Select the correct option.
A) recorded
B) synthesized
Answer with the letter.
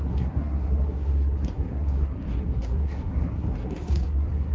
B